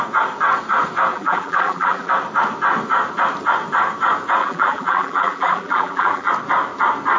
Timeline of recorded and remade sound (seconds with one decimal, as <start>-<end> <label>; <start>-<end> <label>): 0.0-1.1 recorded; 1.1-2.1 remade; 2.1-4.4 recorded; 4.4-6.3 remade; 6.3-7.2 recorded